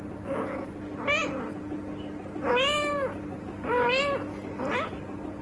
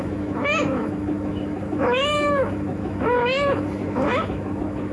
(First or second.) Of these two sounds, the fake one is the second